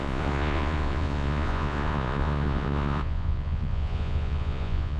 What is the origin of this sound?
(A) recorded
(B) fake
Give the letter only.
B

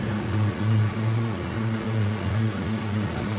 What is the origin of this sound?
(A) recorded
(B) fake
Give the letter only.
B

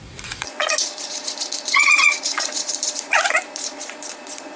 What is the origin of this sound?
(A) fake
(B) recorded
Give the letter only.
A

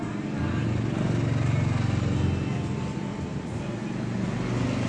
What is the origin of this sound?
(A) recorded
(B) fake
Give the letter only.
A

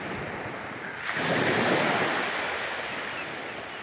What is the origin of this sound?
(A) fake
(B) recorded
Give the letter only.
B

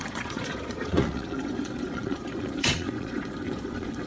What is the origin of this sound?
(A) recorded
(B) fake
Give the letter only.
B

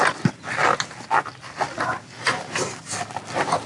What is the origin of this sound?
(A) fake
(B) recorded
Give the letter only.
B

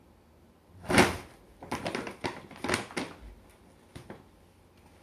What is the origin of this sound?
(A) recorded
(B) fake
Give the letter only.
A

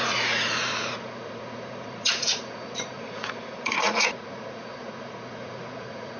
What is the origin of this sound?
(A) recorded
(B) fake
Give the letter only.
B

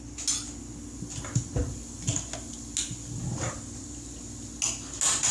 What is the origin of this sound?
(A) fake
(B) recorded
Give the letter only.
B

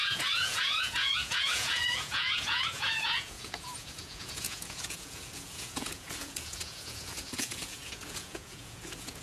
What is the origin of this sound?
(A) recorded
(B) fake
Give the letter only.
B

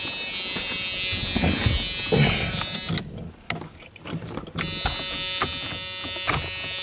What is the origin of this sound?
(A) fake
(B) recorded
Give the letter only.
B